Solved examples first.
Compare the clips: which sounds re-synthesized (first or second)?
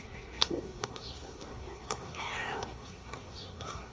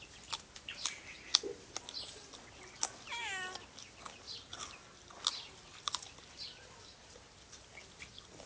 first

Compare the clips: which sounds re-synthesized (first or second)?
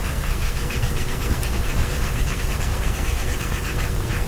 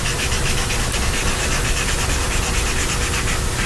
first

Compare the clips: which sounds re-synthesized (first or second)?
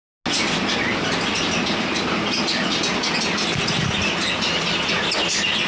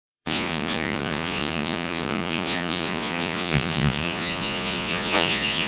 second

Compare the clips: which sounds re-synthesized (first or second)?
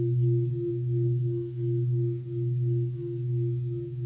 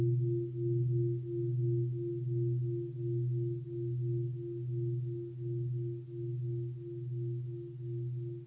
first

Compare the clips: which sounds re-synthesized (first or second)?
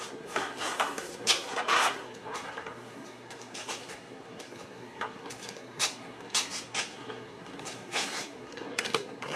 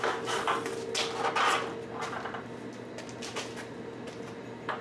first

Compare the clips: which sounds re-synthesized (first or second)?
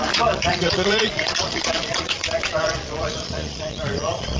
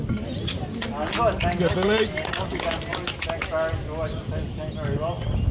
first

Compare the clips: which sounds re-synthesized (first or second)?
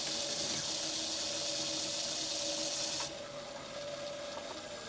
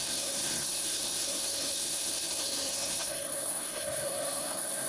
second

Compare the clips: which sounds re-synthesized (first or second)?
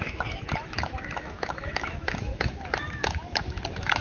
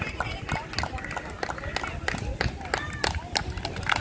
first